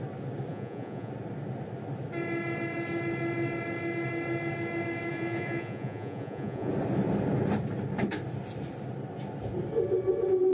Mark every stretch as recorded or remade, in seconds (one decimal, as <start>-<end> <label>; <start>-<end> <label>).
0.0-0.5 recorded; 0.5-1.1 remade; 1.1-5.1 recorded; 5.1-6.7 remade; 6.7-10.5 recorded

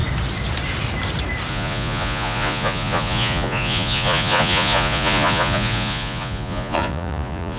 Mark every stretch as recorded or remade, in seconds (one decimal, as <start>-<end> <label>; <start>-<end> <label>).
0.0-1.5 recorded; 1.5-7.6 remade

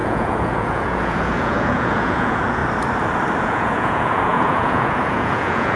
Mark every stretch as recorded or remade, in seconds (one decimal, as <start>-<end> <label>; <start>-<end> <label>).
0.0-2.6 remade; 2.6-3.4 recorded; 3.4-5.8 remade

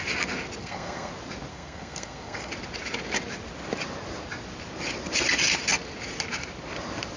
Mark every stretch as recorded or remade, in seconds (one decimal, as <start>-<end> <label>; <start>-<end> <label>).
0.0-0.6 recorded; 0.6-1.1 remade; 1.1-1.5 recorded; 1.5-2.5 remade; 2.5-7.2 recorded

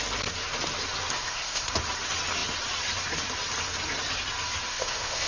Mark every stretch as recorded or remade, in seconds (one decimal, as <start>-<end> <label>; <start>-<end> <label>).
0.0-1.2 recorded; 1.2-1.7 remade; 1.7-4.7 recorded; 4.7-5.3 remade